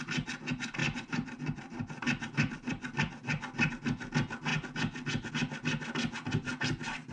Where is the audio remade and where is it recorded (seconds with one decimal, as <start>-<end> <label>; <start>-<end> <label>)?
0.0-0.8 recorded; 0.8-3.7 remade; 3.7-7.1 recorded